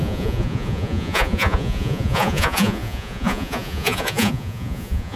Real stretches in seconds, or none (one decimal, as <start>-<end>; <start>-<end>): none